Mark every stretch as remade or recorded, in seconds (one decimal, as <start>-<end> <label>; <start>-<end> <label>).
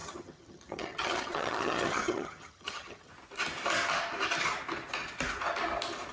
0.0-3.1 remade; 3.1-6.1 recorded